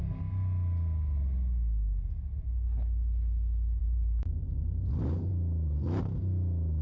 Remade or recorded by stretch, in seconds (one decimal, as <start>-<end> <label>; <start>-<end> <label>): 0.0-3.8 recorded; 3.8-5.3 remade; 5.3-6.8 recorded